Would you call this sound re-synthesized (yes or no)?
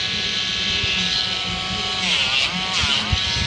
no